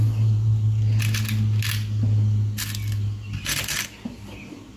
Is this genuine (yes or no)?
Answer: yes